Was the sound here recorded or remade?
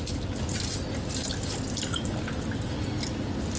recorded